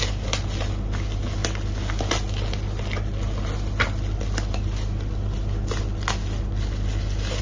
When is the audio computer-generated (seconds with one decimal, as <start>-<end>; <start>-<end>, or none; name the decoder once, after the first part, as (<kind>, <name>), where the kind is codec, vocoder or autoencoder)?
none